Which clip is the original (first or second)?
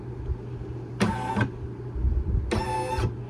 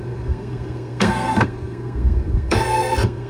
first